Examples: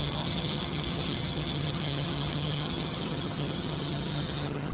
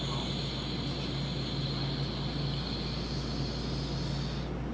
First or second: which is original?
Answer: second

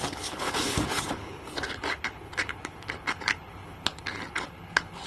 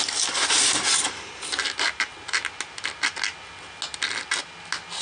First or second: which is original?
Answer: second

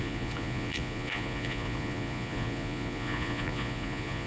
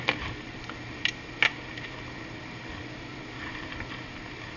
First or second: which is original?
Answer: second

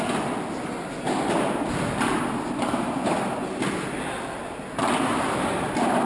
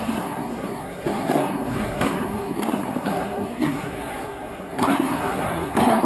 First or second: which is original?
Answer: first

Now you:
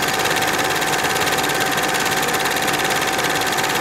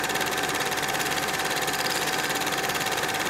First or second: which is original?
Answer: first